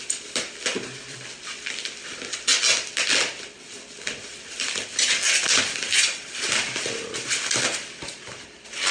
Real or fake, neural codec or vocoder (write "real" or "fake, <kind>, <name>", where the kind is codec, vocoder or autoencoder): real